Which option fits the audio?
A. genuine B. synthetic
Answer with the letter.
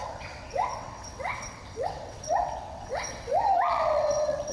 B